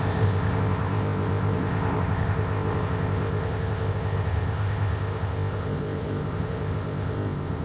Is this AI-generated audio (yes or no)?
yes